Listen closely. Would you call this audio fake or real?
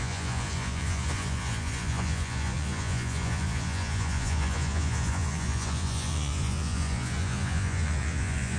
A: fake